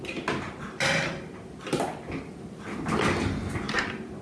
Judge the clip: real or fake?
real